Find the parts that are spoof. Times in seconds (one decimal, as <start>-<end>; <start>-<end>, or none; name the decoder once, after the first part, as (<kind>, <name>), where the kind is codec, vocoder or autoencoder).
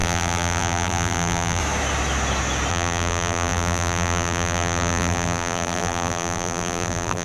0.0-1.6 (vocoder, BigVGAN v2); 2.7-7.2